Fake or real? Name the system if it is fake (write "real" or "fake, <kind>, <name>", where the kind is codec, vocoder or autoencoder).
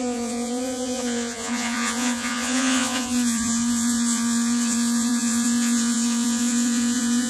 fake, vocoder, Vocos